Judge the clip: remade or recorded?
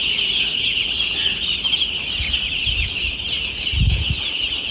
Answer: recorded